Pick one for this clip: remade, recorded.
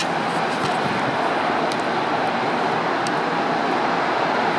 recorded